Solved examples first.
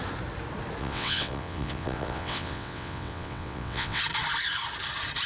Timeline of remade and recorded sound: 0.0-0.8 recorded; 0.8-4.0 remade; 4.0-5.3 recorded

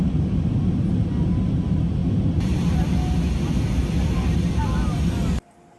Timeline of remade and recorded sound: 0.0-5.8 recorded